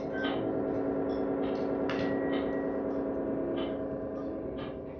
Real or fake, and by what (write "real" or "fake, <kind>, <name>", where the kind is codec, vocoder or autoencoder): real